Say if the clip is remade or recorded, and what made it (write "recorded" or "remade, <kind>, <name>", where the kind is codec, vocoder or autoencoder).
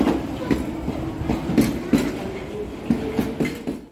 recorded